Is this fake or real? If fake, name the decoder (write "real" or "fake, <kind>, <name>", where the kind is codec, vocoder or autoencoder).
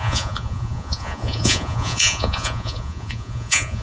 fake, vocoder, Vocos